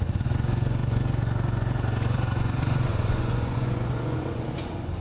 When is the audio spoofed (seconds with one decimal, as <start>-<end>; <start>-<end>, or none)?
0.0-5.0